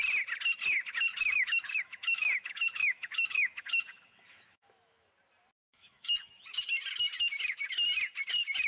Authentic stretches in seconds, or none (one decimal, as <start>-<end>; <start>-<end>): 0.0-1.1; 5.1-5.6; 6.6-8.7